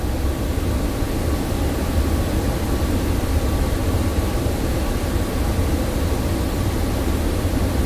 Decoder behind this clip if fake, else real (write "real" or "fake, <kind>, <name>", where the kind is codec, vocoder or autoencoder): real